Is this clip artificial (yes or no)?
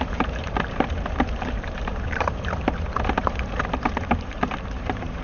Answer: yes